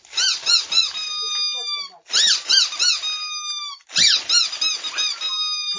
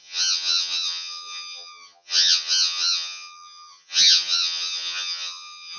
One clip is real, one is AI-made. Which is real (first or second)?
first